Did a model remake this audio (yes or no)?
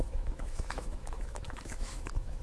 yes